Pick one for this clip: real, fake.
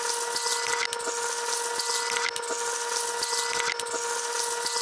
real